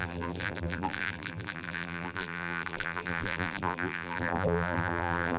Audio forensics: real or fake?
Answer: fake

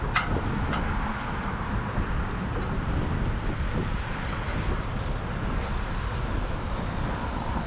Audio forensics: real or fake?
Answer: real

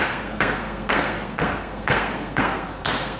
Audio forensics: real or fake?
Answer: fake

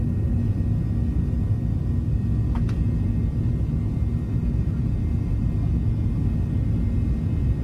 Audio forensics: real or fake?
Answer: real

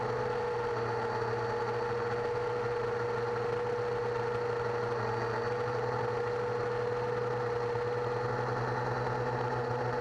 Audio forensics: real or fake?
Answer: real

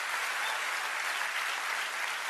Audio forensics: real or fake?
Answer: real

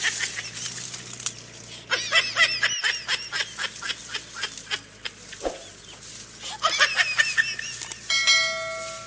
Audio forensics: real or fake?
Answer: real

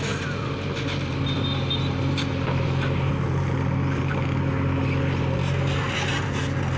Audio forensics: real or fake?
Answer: real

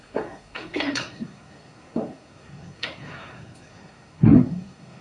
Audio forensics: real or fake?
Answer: fake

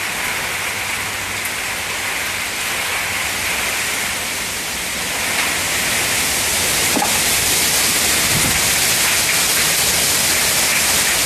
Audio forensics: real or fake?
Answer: real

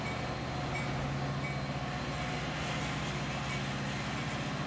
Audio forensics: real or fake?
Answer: real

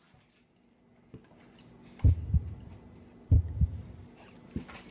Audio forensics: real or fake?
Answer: real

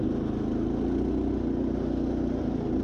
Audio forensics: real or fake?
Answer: real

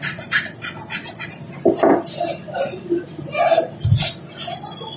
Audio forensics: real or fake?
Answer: real